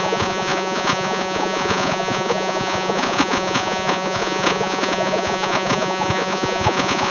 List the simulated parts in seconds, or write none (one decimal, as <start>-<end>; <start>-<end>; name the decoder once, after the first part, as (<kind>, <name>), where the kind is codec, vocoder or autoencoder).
0.0-7.1 (vocoder, Vocos)